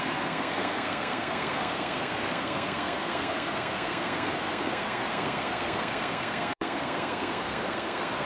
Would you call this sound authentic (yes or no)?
no